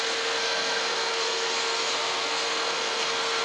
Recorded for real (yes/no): no